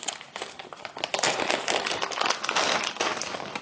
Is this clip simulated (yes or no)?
no